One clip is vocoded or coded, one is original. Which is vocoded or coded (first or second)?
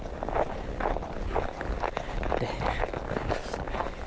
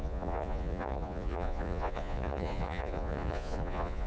second